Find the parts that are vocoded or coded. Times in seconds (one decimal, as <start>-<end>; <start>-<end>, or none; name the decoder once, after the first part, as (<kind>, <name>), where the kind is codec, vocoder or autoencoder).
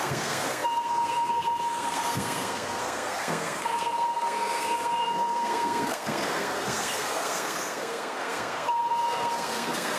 0.0-10.0 (codec, SNAC)